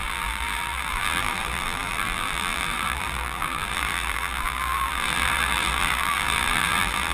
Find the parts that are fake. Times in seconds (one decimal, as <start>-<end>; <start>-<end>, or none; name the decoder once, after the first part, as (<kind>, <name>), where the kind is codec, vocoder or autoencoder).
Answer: 0.0-7.1 (vocoder, BigVGAN v2)